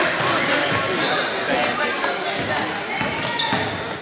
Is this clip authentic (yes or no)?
yes